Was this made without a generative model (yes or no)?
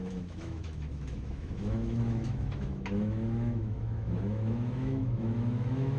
no